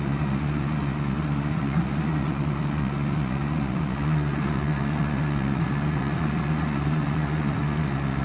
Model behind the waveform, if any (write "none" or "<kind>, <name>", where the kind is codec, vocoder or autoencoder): vocoder, Vocos